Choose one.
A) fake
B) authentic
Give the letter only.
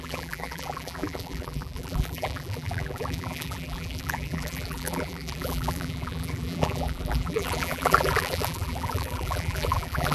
A